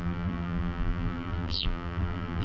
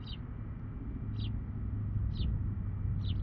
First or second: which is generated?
first